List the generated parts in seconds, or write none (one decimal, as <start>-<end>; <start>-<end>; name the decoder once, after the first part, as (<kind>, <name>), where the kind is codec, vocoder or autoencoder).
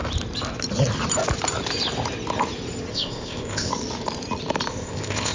2.9-3.7 (codec, ZipCodec); 4.7-5.3